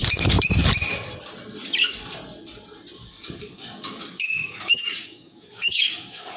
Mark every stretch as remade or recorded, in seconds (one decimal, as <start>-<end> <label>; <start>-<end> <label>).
0.0-0.6 remade; 0.6-3.1 recorded; 3.1-6.4 remade